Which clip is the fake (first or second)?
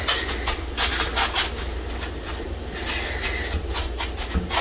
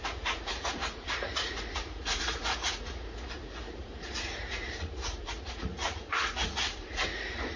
second